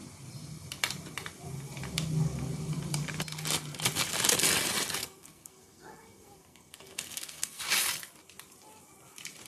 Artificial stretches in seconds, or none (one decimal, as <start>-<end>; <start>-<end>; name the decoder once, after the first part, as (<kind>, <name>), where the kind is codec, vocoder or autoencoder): 5.0-7.6 (codec, SNAC)